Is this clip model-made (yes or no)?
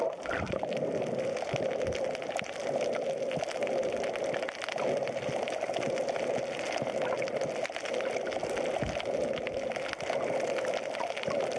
no